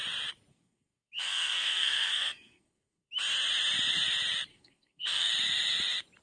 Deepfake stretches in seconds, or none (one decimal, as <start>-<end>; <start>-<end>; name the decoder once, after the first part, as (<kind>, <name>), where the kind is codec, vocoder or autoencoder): 0.5-3.1 (codec, SNAC); 4.5-5.3